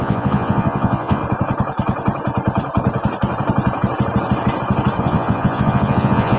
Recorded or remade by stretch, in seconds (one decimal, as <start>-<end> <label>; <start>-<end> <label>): 0.0-1.2 remade; 1.2-5.0 recorded; 5.0-6.4 remade